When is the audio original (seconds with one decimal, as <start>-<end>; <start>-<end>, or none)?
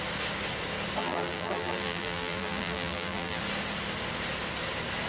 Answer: 0.0-1.0; 3.4-5.1